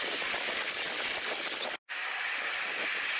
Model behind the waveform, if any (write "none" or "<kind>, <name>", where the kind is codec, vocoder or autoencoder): none